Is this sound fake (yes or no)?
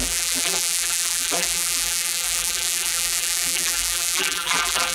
yes